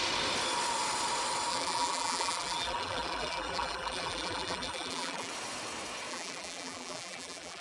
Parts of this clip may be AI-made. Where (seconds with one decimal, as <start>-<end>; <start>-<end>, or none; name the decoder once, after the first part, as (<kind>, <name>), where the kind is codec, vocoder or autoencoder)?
1.5-5.3 (vocoder, BigVGAN v2); 6.1-7.6